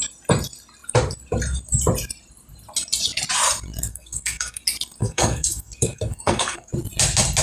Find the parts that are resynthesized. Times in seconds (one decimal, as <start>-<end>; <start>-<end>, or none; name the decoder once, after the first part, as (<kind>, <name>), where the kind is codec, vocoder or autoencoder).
3.9-4.6 (codec, SNAC); 5.0-6.7